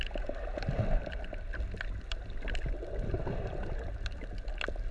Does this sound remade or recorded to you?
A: recorded